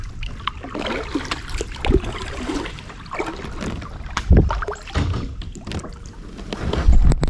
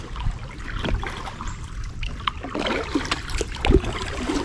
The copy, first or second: second